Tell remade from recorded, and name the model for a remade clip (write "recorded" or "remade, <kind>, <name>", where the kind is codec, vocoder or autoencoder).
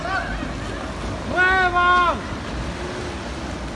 recorded